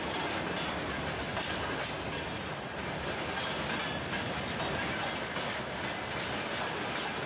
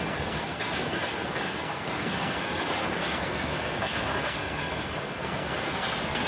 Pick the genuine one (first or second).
first